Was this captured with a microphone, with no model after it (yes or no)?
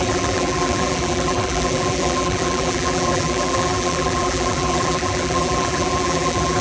no